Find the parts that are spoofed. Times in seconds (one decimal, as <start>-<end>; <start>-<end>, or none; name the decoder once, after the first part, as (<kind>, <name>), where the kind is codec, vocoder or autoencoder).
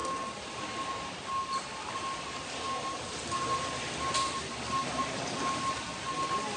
none